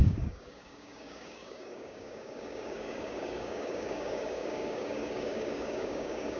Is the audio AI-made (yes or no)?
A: yes